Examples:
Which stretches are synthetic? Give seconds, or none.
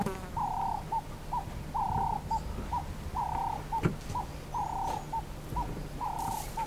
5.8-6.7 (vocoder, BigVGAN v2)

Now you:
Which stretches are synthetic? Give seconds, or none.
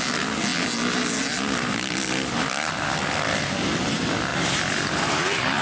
4.3-5.6 (vocoder, BigVGAN v2)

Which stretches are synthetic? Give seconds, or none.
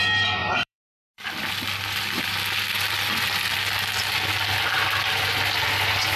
0.4-2.2 (vocoder, BigVGAN v2)